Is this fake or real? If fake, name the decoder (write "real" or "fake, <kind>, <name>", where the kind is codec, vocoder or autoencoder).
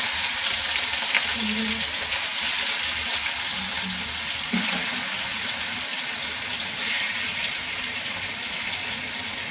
real